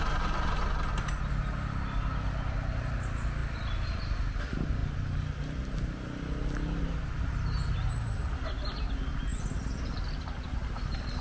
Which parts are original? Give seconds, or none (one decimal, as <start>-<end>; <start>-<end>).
0.0-11.2